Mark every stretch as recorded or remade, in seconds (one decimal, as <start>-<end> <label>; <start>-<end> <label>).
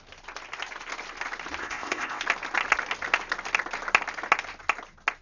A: 0.0-1.6 recorded; 1.6-2.2 remade; 2.2-5.2 recorded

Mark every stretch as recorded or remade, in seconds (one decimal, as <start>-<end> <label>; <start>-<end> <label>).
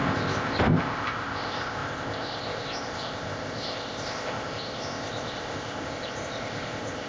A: 0.0-7.1 remade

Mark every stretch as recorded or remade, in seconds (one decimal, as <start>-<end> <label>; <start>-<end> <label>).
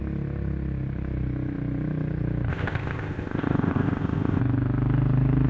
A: 0.0-2.5 recorded; 2.5-4.4 remade; 4.4-5.5 recorded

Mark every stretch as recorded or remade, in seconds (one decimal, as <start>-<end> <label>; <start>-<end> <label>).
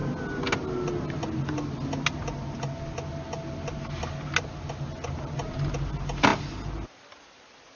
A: 0.0-7.8 recorded